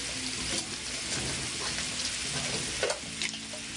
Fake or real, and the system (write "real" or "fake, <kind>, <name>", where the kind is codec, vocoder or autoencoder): real